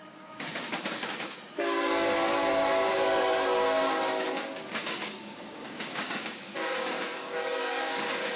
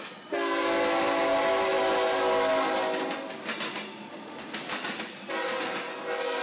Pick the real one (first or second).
second